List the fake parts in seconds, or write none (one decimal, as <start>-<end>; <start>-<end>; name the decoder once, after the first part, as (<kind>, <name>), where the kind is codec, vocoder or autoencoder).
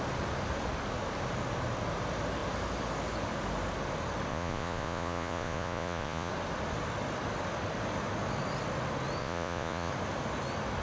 4.3-6.3 (vocoder, Vocos); 9.2-9.9